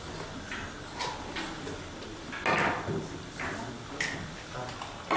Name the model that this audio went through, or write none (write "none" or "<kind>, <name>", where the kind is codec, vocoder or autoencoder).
none